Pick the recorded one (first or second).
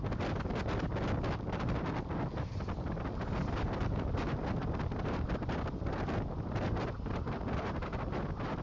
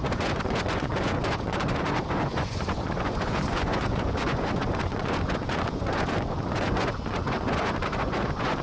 first